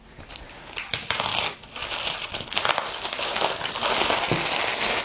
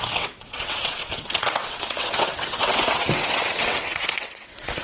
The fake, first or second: second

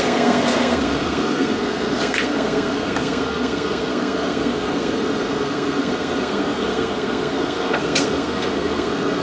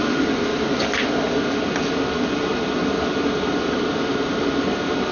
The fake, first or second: first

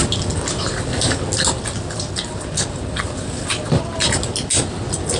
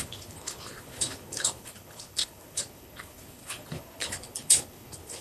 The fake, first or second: second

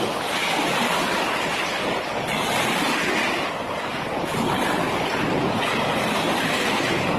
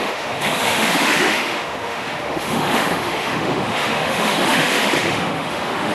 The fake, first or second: second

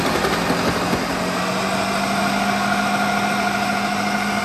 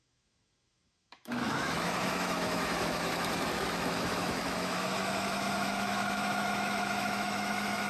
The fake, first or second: second